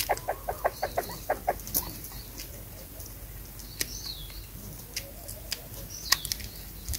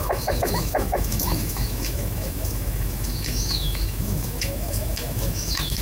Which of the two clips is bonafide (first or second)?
first